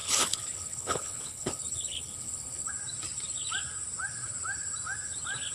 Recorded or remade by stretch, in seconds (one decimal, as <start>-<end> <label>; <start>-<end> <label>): 0.0-2.7 remade; 2.7-5.5 recorded